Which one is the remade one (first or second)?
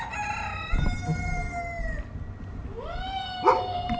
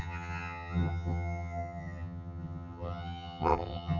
second